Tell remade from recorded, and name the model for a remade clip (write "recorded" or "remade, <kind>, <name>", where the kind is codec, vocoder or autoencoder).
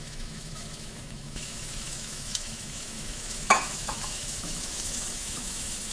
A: remade, autoencoder, DAC-VAE